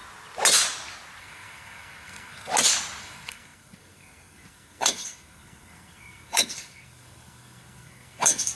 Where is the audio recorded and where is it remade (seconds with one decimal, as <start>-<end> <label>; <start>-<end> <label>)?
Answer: 0.0-1.2 recorded; 1.2-2.5 remade; 2.5-3.0 recorded; 3.0-8.6 remade